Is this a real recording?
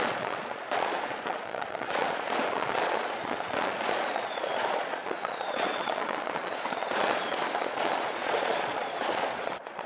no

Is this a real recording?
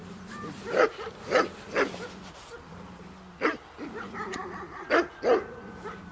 yes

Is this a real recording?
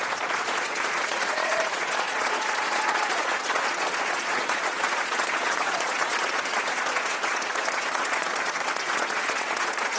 no